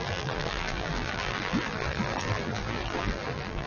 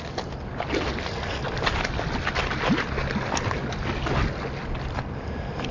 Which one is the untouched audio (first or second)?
second